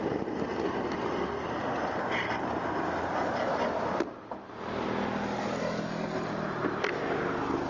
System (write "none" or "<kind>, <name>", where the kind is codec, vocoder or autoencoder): none